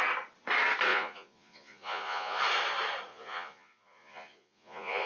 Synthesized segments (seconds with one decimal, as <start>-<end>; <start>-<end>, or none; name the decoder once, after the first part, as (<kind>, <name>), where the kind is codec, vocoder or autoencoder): 0.9-2.4 (vocoder, Vocos); 3.1-5.1